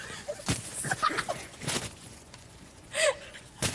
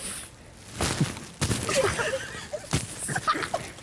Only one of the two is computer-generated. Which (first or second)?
first